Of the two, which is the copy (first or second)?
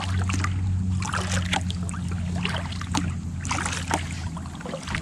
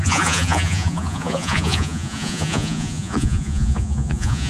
second